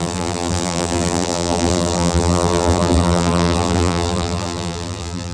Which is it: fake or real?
fake